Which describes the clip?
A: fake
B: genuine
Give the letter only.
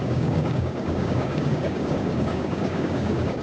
A